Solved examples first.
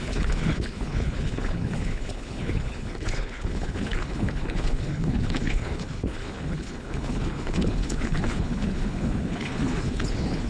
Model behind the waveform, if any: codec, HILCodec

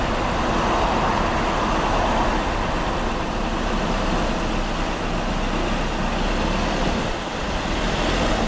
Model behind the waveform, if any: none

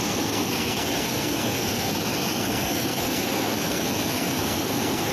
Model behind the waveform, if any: codec, SNAC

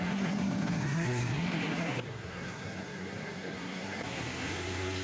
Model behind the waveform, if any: codec, SNAC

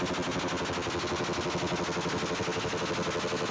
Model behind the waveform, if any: none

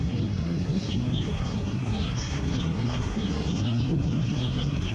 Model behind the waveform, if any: codec, SNAC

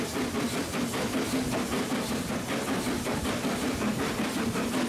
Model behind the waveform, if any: none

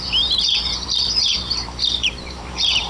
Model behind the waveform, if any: vocoder, BigVGAN v2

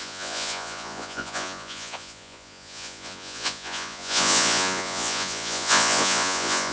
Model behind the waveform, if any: vocoder, Vocos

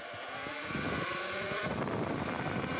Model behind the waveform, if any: none